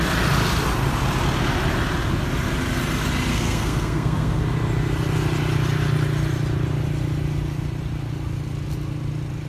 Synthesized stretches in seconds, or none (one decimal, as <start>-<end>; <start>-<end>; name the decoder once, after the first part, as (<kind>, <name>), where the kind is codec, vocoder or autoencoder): 3.3-4.4 (codec, SNAC)

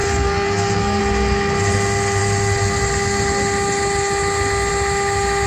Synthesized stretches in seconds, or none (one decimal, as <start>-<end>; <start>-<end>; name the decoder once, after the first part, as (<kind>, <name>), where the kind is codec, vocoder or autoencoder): 0.0-1.0 (codec, SNAC)

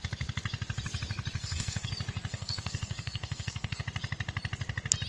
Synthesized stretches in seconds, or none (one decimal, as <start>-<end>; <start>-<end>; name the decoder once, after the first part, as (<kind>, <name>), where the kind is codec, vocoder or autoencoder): 1.4-1.9 (codec, SNAC); 2.3-3.8

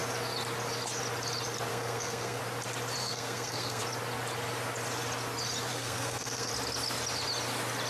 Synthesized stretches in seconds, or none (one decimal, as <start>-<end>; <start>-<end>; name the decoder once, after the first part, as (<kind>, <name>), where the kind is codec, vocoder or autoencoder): 1.7-2.4 (codec, SNAC); 3.0-3.8; 5.7-6.5

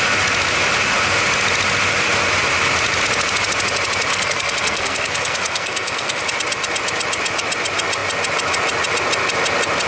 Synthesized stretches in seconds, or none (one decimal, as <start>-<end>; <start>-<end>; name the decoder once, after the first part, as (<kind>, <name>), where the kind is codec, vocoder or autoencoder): 4.1-6.2 (codec, SNAC)

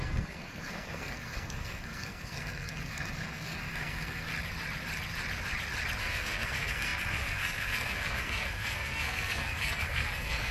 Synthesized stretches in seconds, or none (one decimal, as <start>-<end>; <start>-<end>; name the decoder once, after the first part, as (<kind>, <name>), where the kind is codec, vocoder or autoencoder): 0.0-4.3 (codec, SNAC); 6.0-10.5